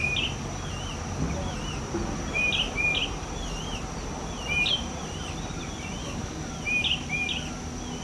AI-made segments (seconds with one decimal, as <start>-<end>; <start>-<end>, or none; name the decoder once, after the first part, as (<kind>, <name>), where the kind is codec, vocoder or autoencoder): 6.0-6.5 (codec, DAC)

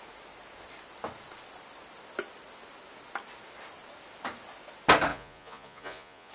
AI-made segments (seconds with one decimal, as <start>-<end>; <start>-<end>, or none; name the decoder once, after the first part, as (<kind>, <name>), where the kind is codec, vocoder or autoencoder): 5.1-6.3 (vocoder, Vocos)

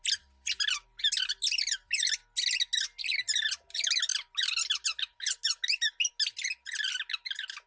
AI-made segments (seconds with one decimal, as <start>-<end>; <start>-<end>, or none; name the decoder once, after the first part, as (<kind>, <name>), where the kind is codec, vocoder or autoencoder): none

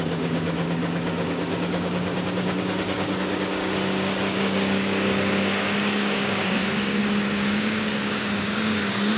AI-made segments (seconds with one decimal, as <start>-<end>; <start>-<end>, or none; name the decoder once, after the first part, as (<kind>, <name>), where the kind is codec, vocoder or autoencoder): 0.0-9.2 (codec, DAC)

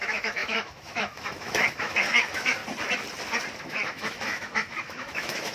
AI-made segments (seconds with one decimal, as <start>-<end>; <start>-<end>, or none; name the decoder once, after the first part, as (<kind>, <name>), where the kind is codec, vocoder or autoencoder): 0.0-2.6 (autoencoder, DAC-VAE); 3.6-5.5

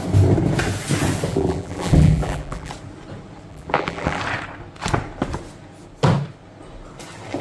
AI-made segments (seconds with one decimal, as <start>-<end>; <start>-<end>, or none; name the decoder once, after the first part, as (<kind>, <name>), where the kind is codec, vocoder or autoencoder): 1.3-2.7 (vocoder, BigVGAN v2); 3.5-4.2

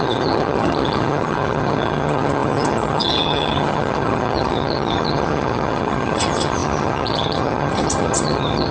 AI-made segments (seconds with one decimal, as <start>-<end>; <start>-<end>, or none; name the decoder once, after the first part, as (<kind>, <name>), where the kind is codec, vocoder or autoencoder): 0.0-8.7 (vocoder, HiFi-GAN)